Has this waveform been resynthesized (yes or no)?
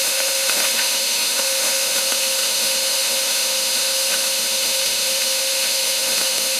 yes